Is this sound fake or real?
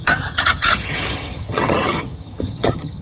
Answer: fake